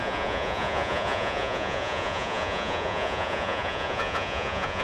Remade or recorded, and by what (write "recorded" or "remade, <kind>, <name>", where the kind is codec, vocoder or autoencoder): remade, vocoder, Vocos